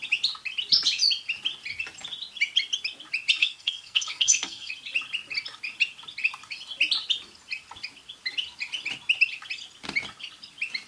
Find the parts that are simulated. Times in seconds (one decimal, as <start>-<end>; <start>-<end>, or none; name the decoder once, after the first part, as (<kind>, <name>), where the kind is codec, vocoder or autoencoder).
3.4-4.7 (codec, SNAC)